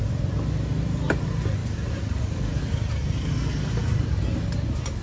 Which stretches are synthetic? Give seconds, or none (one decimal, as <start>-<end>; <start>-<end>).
none